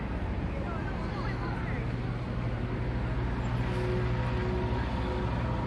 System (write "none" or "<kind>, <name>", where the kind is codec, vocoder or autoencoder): none